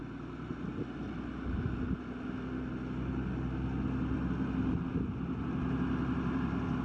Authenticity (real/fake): real